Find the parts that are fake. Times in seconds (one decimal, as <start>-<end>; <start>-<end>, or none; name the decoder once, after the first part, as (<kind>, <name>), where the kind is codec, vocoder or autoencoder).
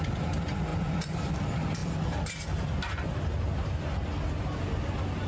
none